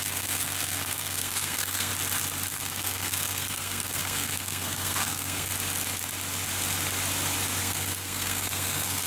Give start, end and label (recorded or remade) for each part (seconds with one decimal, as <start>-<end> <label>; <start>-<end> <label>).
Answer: 0.0-1.9 remade; 1.9-2.5 recorded; 2.5-5.5 remade; 5.5-7.6 recorded; 7.6-9.1 remade